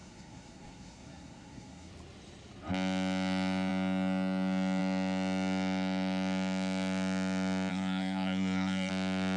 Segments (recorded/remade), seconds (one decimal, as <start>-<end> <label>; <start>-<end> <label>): 0.0-1.9 remade; 1.9-7.7 recorded; 7.7-8.9 remade; 8.9-9.4 recorded